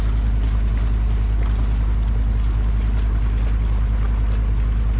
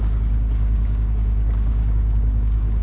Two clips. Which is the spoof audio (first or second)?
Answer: second